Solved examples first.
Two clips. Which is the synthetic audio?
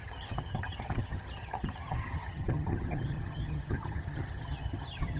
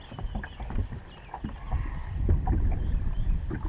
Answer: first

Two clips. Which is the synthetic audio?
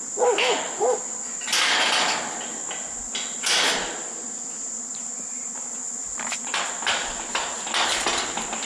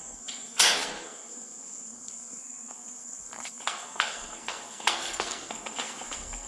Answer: second